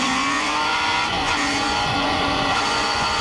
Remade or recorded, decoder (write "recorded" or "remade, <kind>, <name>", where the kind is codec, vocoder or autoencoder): remade, vocoder, Vocos